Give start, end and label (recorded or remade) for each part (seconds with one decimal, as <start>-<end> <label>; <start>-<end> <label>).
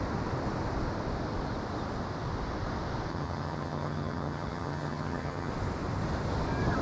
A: 0.0-3.1 recorded; 3.1-5.5 remade; 5.5-6.8 recorded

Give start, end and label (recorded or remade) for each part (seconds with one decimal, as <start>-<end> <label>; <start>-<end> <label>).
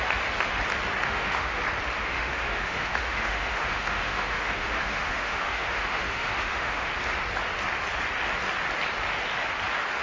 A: 0.0-1.0 recorded; 1.0-1.6 remade; 1.6-2.0 recorded; 2.0-6.9 remade; 6.9-10.0 recorded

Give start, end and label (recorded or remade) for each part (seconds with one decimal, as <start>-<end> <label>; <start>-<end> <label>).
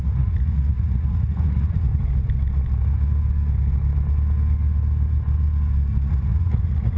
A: 0.0-1.9 remade; 1.9-6.1 recorded; 6.1-7.0 remade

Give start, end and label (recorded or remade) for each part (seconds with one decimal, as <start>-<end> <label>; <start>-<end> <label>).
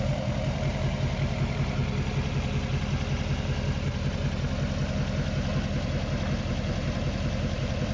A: 0.0-1.8 remade; 1.8-6.4 recorded; 6.4-7.9 remade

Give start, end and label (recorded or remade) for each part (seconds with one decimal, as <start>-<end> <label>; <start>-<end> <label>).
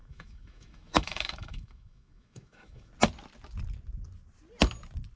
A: 0.0-2.9 remade; 2.9-5.2 recorded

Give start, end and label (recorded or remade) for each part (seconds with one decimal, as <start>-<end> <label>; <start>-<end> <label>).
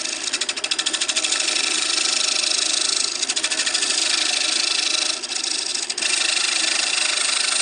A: 0.0-4.0 recorded; 4.0-4.6 remade; 4.6-5.7 recorded; 5.7-6.9 remade; 6.9-7.6 recorded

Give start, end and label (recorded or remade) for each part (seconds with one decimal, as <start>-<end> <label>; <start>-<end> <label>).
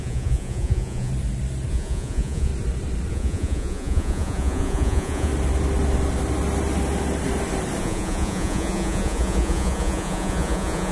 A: 0.0-1.1 remade; 1.1-1.7 recorded; 1.7-2.5 remade; 2.5-3.1 recorded; 3.1-5.3 remade; 5.3-7.8 recorded; 7.8-10.9 remade